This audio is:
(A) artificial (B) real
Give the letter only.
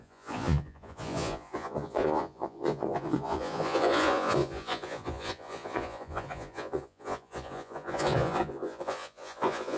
A